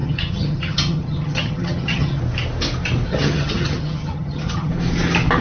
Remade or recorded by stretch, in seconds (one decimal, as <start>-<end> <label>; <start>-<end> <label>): 0.0-2.2 remade; 2.2-3.1 recorded; 3.1-4.7 remade; 4.7-5.4 recorded